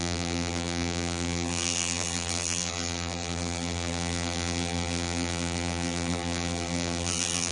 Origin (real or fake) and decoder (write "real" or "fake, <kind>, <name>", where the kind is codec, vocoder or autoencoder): fake, vocoder, BigVGAN v2